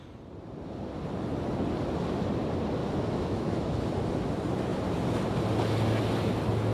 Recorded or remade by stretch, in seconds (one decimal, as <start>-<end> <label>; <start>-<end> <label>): 0.0-2.8 recorded; 2.8-3.9 remade; 3.9-6.7 recorded